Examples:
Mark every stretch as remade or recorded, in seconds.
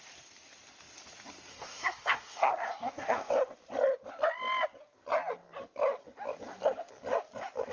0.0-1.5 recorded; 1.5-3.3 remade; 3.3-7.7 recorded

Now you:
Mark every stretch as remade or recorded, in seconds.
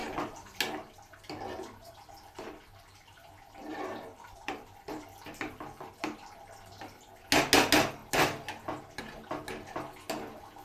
0.0-0.6 remade; 0.6-1.8 recorded; 1.8-5.9 remade; 5.9-10.6 recorded